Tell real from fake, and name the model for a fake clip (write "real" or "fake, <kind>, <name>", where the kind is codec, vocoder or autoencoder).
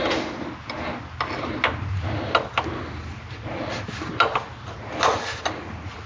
real